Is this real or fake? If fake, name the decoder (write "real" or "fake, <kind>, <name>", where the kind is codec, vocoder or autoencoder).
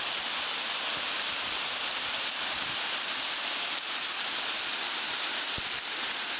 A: real